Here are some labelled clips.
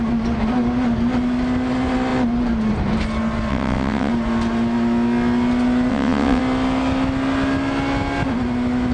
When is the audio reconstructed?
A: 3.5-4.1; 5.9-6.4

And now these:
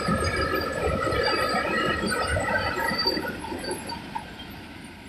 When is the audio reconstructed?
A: none

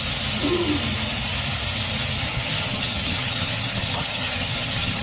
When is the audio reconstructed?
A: 2.2-5.0

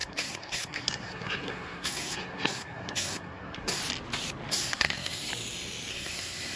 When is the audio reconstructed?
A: 0.0-3.8; 4.5-5.3; 5.9-6.6

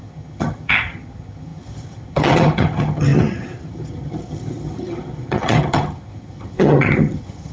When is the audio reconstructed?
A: 0.0-7.5